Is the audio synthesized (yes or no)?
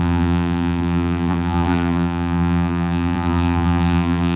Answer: yes